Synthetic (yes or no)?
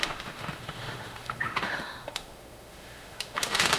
yes